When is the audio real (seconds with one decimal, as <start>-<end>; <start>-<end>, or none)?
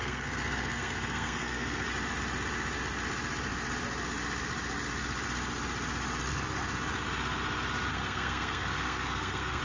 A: 1.9-7.9